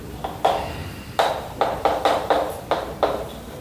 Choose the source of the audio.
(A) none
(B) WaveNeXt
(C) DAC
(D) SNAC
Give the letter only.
A